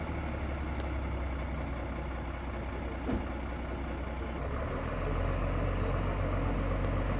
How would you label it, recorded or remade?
recorded